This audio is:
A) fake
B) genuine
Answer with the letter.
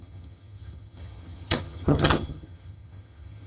A